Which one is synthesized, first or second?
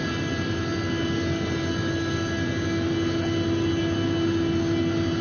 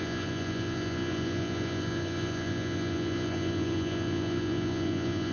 second